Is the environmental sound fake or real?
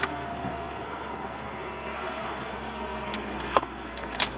fake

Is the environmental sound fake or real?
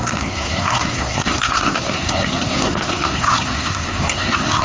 fake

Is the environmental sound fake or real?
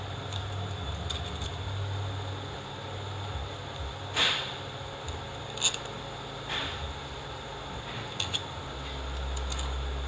real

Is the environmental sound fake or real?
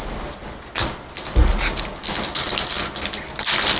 real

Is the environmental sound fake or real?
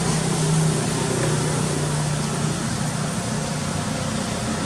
real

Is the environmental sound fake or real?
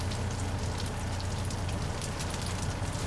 real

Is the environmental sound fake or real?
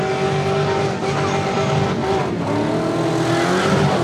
real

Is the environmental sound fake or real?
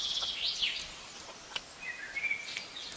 real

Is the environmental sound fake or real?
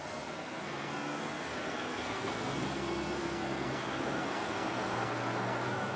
fake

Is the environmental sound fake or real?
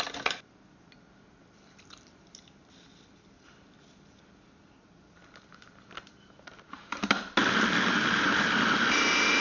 real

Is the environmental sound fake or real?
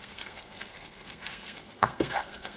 fake